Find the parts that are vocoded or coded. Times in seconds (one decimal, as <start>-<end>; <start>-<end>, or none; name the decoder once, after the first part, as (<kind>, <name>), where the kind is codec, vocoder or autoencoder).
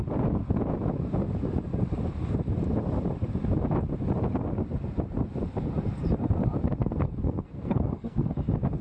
6.8-8.4 (codec, SNAC)